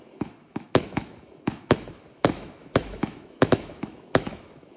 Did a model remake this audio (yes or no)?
yes